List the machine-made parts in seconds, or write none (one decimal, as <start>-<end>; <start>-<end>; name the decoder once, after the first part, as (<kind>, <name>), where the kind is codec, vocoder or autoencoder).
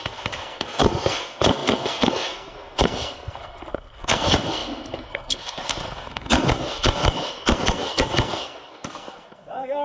0.0-9.8 (codec, SNAC)